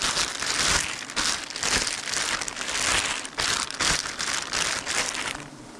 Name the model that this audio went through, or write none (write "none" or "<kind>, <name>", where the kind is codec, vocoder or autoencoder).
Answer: none